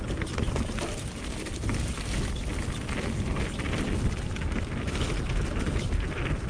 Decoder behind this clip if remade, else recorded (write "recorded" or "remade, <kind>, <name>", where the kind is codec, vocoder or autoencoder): recorded